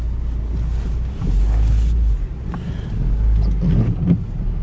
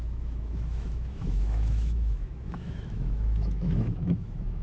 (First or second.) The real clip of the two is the first